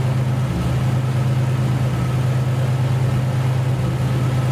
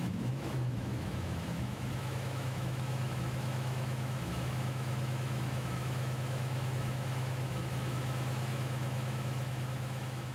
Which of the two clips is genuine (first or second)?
first